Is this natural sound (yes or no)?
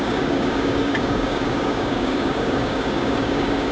no